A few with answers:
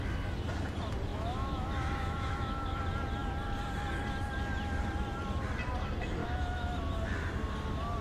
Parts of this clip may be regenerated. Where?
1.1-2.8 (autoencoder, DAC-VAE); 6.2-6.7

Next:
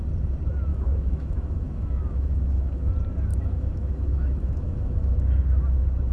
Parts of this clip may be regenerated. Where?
0.7-2.9 (autoencoder, DAC-VAE); 3.3-5.1